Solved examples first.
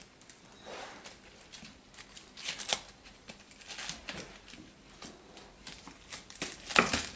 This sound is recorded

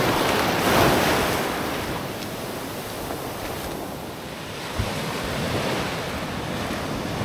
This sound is recorded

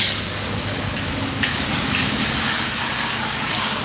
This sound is remade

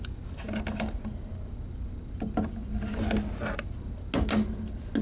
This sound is recorded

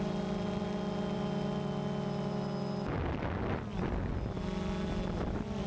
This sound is recorded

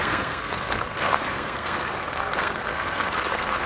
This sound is remade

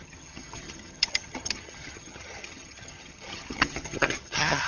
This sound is remade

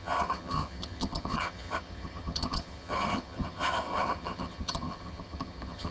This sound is remade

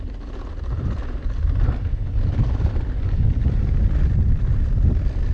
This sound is recorded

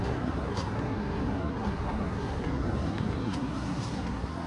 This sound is remade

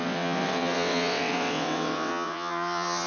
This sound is remade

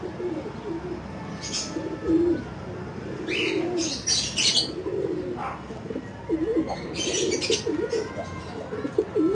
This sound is recorded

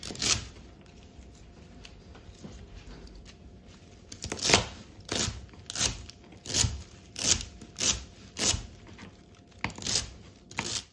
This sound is recorded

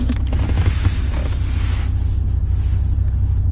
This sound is recorded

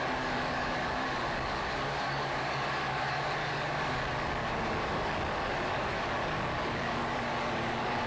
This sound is remade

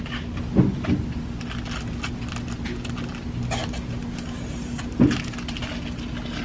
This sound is recorded